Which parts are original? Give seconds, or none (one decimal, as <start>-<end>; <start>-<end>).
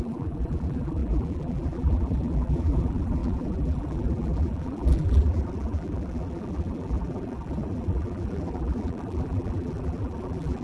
none